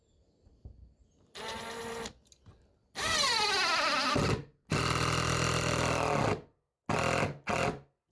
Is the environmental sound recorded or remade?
recorded